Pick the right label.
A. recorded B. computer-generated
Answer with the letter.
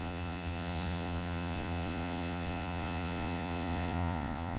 B